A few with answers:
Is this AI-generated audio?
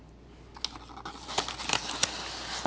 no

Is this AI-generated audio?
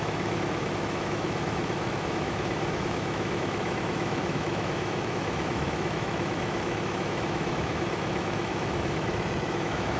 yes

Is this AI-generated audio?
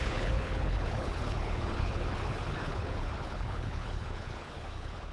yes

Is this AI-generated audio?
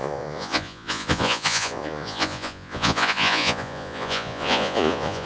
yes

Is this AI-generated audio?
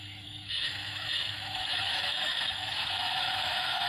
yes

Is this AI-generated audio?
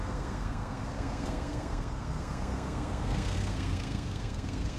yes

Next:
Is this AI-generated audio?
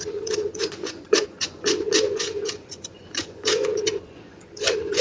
yes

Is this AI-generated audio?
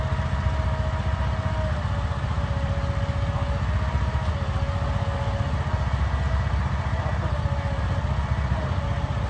no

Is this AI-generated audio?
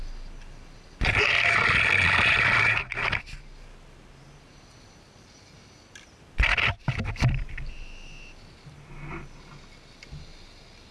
no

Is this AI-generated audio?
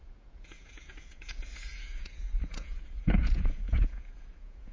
yes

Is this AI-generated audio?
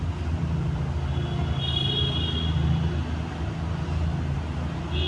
no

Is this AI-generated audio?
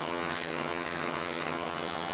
yes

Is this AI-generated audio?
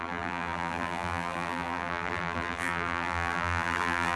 yes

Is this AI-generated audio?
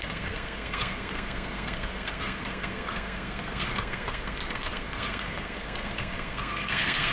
yes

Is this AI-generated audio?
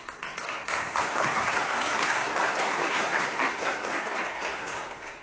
yes